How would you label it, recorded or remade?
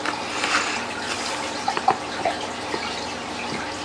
recorded